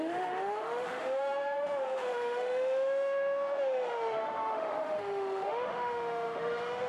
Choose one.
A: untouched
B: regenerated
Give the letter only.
B